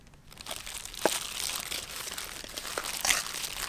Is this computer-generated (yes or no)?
no